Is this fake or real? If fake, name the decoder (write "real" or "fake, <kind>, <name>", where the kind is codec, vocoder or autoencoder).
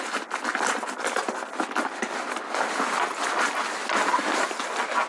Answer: real